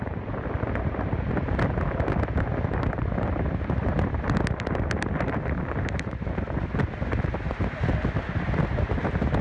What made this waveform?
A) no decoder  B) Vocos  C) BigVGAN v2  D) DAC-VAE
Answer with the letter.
A